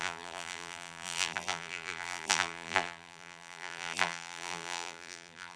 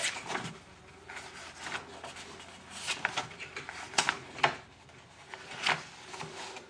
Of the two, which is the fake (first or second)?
first